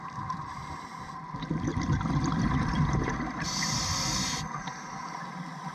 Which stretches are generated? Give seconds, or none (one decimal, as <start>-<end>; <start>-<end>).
1.7-2.4